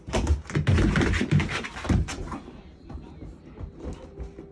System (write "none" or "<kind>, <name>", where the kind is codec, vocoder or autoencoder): none